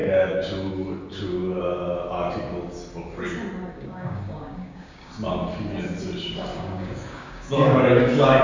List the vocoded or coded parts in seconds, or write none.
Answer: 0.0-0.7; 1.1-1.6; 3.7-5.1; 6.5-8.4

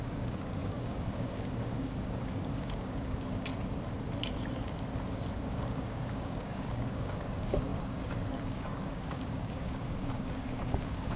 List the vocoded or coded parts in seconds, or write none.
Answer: 0.0-3.5; 5.5-11.2

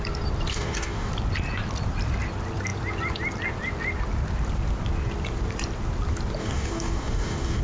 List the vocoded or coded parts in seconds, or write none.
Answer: 0.5-1.1; 6.4-7.6

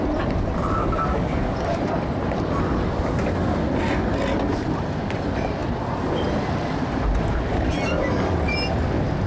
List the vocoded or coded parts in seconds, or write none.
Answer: 0.8-1.8